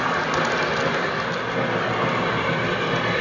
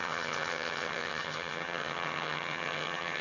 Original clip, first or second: first